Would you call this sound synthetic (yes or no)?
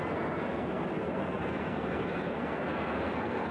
yes